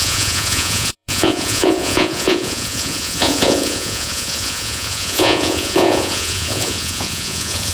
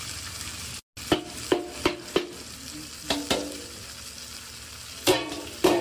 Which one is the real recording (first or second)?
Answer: second